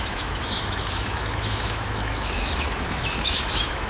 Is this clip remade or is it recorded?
remade